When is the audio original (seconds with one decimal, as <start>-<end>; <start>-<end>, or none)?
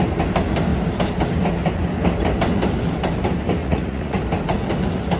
0.0-3.6; 4.2-5.2